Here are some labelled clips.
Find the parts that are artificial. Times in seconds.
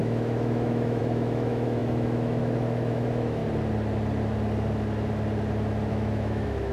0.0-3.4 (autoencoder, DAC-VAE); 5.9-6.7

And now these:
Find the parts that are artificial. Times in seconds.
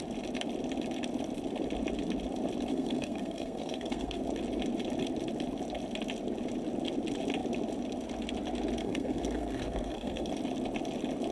2.7-4.2 (codec, SNAC); 8.8-10.3